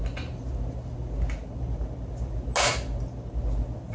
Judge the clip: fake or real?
real